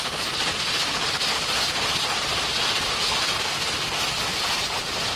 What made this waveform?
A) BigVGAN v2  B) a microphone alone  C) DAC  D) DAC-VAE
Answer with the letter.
B